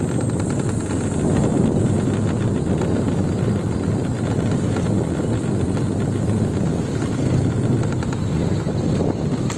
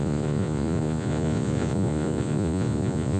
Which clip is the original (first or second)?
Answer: first